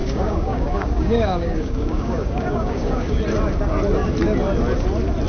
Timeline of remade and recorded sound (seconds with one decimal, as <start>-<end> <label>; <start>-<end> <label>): 0.0-3.2 remade; 3.2-5.3 recorded

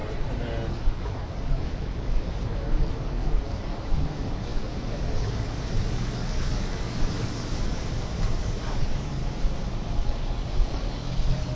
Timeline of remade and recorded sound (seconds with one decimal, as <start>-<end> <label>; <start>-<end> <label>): 0.0-0.7 recorded; 0.7-9.2 remade; 9.2-9.9 recorded; 9.9-11.6 remade

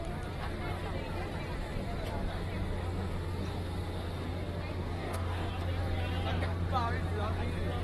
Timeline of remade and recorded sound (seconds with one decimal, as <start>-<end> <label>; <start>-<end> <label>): 0.0-4.9 recorded; 4.9-5.5 remade; 5.5-7.8 recorded

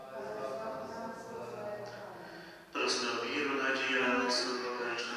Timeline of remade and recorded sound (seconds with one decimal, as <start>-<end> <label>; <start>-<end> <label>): 0.0-4.0 recorded; 4.0-5.2 remade

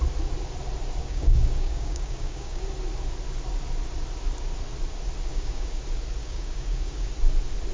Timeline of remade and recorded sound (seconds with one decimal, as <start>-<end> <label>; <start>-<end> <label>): 0.0-1.0 recorded; 1.0-2.6 remade; 2.6-5.3 recorded; 5.3-5.8 remade; 5.8-6.2 recorded; 6.2-7.1 remade; 7.1-7.7 recorded

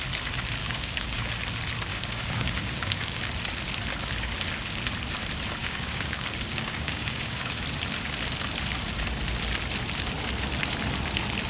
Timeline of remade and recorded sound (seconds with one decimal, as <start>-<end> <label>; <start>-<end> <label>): 0.0-0.6 recorded; 0.6-1.3 remade; 1.3-1.9 recorded; 1.9-3.2 remade; 3.2-5.6 recorded; 5.6-7.6 remade; 7.6-11.5 recorded

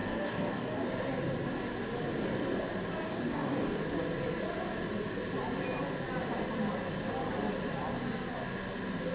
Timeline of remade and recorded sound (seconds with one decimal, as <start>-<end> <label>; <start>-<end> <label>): 0.0-0.9 remade; 0.9-3.1 recorded; 3.1-3.8 remade; 3.8-9.1 recorded

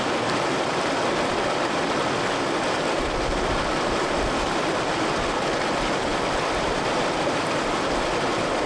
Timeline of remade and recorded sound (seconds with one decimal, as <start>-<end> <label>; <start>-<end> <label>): 0.0-8.7 recorded